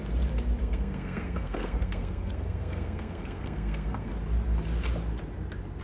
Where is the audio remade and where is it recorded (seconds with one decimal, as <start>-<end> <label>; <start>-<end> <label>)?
0.0-0.6 recorded; 0.6-4.1 remade; 4.1-5.8 recorded